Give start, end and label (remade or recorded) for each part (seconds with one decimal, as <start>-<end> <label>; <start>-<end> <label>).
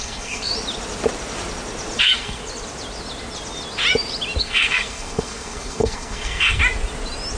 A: 0.0-0.5 remade; 0.5-2.0 recorded; 2.0-2.4 remade; 2.4-4.4 recorded; 4.4-6.6 remade; 6.6-7.4 recorded